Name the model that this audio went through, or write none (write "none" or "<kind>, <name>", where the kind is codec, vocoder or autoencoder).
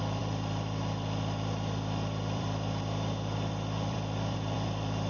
vocoder, BigVGAN v2